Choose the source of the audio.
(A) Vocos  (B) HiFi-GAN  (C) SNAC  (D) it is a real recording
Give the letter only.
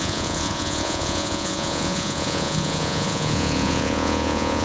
A